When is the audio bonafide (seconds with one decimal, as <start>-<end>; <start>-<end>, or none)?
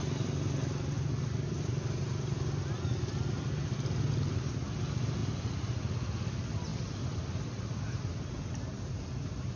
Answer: 0.0-9.6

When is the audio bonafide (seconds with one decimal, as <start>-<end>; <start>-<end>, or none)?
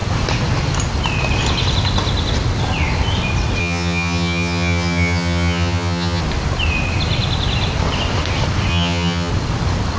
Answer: 0.0-3.6; 6.2-8.7; 9.3-10.0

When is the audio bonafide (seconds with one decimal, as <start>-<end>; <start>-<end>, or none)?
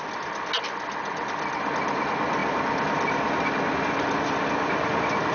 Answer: 0.0-5.3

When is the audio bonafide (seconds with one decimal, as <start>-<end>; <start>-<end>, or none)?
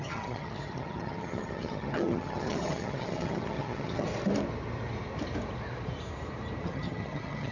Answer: 4.1-6.6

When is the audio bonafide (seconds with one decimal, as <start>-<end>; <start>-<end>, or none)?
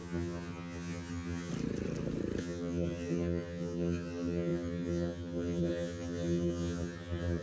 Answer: 1.5-2.4